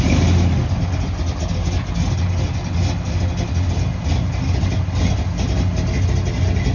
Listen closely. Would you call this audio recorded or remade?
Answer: recorded